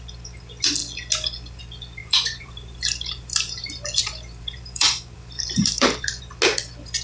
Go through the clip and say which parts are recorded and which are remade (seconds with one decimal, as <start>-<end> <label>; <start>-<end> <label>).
0.0-2.0 recorded; 2.0-6.2 remade; 6.2-7.0 recorded